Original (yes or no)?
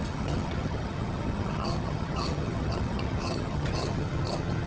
no